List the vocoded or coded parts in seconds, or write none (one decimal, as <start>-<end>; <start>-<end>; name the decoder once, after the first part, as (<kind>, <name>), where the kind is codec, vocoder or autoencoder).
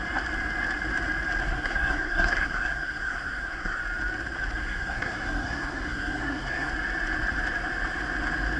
1.4-3.8 (codec, SNAC); 4.6-6.7